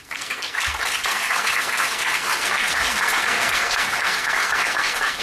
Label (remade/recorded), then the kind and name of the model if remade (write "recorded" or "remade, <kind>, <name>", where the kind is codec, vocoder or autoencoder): remade, codec, SNAC